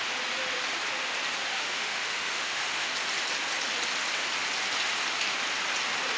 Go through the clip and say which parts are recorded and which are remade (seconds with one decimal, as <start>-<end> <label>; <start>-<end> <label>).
0.0-1.5 recorded; 1.5-2.9 remade; 2.9-6.2 recorded